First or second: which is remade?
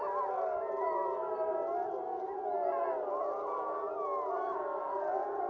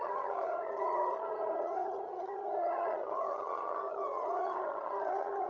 second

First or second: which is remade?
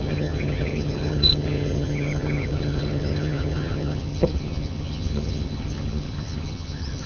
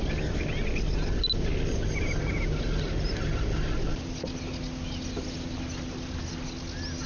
first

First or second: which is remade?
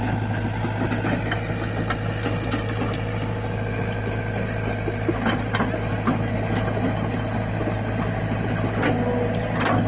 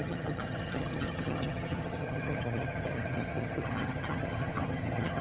second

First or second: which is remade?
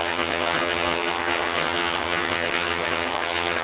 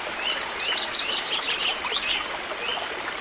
first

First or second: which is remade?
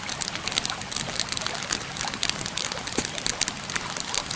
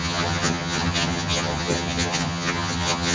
second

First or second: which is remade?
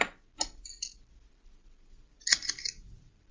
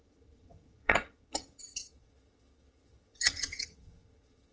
second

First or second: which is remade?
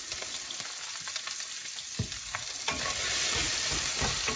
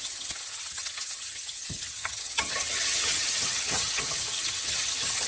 second